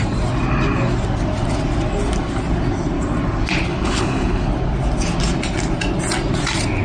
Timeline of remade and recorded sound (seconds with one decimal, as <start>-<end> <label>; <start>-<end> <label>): 0.0-3.7 recorded; 3.7-4.5 remade; 4.5-6.8 recorded